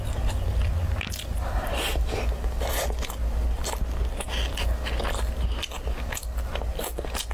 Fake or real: real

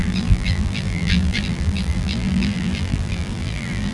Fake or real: fake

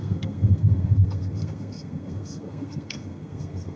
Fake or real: fake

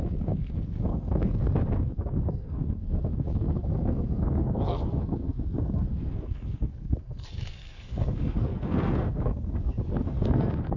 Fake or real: fake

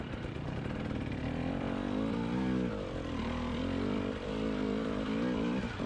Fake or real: fake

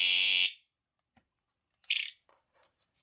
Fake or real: fake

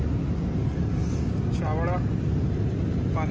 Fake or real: real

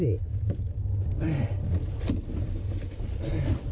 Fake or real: real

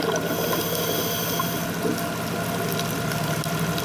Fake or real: real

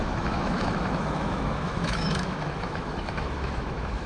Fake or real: fake